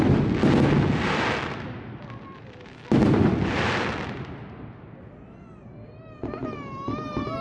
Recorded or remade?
recorded